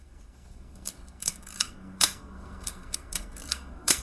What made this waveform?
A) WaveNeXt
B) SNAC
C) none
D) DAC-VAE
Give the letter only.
B